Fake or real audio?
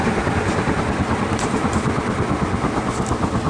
real